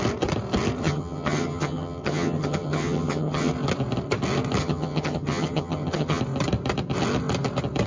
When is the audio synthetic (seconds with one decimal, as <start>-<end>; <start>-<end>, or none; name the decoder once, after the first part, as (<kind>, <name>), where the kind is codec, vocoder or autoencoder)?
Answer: 0.8-3.5 (vocoder, HiFi-GAN); 4.6-6.2